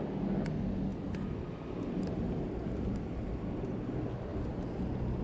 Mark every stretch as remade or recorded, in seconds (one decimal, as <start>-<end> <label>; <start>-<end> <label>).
0.0-5.2 recorded